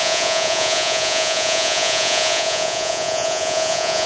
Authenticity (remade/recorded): remade